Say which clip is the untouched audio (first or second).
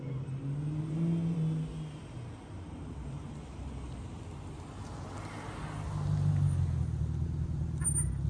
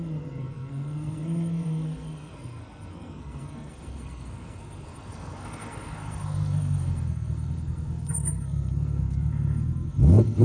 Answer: first